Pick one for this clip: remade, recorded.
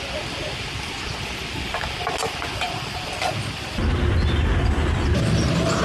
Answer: recorded